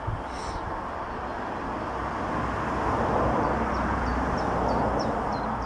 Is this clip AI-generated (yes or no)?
no